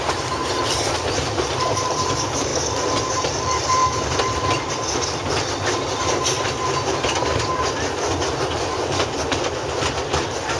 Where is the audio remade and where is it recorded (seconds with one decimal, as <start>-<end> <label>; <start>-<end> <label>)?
0.0-2.5 remade; 2.5-3.1 recorded; 3.1-3.8 remade; 3.8-8.4 recorded; 8.4-10.6 remade